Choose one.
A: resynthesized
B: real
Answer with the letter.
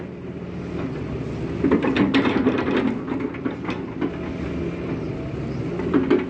B